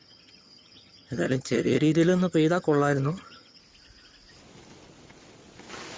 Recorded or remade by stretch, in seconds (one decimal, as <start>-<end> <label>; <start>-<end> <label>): 0.0-3.6 remade; 3.6-6.0 recorded